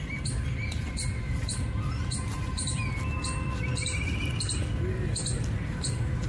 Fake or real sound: real